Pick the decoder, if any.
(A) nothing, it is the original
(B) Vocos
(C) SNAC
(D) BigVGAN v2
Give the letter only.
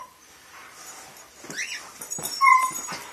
D